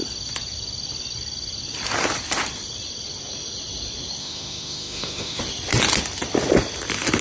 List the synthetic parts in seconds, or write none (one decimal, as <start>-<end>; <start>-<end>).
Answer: 4.2-5.4